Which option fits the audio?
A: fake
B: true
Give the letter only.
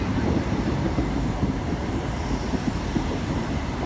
A